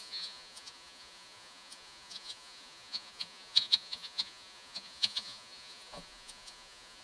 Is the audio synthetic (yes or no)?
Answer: yes